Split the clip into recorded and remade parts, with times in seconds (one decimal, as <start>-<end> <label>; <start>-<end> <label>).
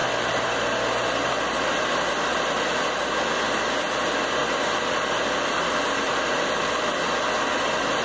0.0-8.0 recorded